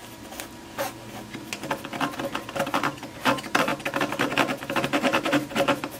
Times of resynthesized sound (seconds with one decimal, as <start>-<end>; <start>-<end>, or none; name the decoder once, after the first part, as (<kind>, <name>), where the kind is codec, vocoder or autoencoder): 2.6-3.7 (vocoder, BigVGAN v2); 4.6-6.0